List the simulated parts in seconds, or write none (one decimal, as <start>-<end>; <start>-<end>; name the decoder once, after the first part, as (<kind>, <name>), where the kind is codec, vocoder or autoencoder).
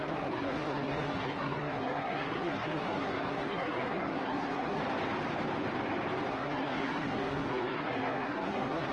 0.0-4.8 (codec, SNAC); 6.3-8.9